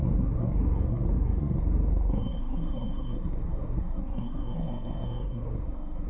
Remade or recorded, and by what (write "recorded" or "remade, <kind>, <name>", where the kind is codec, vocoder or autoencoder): remade, codec, SNAC